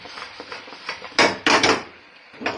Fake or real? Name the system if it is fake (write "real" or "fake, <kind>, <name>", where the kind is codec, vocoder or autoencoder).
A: real